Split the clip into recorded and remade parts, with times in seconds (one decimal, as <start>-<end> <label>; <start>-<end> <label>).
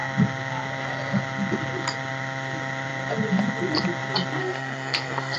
0.0-4.4 recorded; 4.4-5.4 remade